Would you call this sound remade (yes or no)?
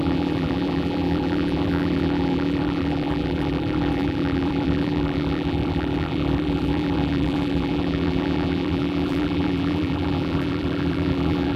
yes